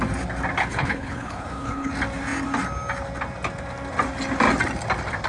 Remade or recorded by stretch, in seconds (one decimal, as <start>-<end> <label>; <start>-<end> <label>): 0.0-0.6 recorded; 0.6-1.9 remade; 1.9-5.3 recorded